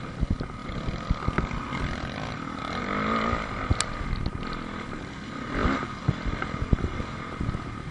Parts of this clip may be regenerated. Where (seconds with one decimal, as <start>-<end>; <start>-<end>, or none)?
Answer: 0.6-2.8